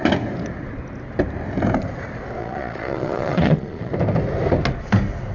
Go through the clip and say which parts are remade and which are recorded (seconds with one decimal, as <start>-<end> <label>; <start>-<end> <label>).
0.0-2.4 recorded; 2.4-3.9 remade; 3.9-5.3 recorded